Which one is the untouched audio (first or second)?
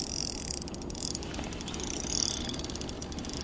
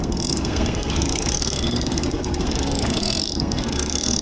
first